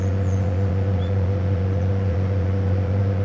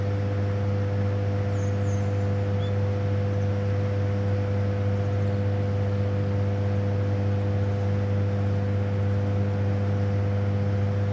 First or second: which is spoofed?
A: first